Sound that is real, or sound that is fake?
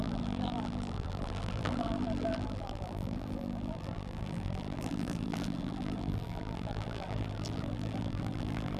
fake